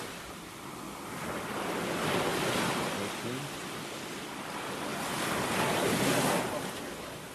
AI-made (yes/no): no